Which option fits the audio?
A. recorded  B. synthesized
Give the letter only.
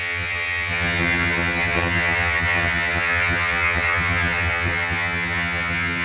B